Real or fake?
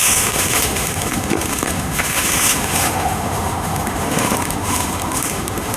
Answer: fake